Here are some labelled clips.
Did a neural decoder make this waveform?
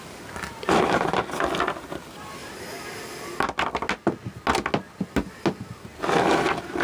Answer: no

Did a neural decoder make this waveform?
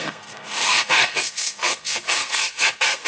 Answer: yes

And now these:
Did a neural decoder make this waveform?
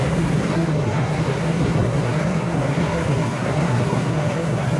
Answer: yes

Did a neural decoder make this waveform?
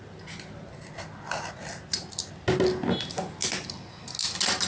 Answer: no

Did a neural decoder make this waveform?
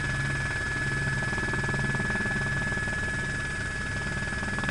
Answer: no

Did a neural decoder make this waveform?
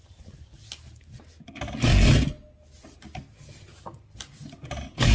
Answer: no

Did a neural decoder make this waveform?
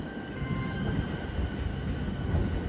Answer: no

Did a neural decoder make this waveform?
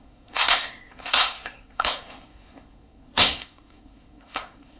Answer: yes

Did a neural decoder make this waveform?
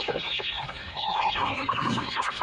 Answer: yes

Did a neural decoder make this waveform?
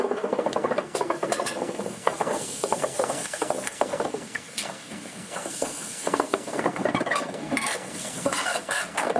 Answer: yes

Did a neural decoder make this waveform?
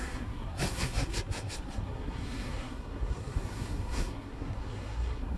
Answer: yes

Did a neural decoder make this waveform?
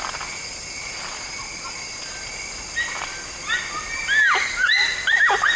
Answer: no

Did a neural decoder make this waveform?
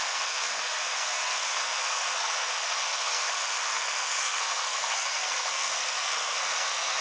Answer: yes